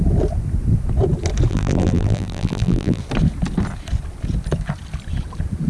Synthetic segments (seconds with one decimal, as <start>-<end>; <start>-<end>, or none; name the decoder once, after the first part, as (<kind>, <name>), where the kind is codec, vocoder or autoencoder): 1.5-3.0 (vocoder, BigVGAN v2)